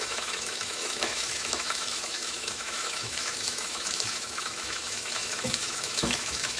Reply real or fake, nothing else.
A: fake